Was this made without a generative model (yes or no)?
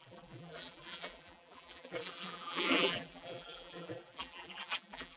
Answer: no